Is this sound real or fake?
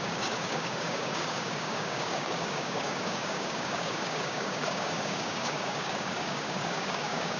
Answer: fake